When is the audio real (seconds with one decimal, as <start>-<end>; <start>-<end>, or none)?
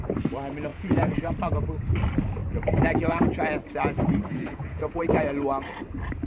0.0-0.7; 1.3-4.3; 5.0-6.3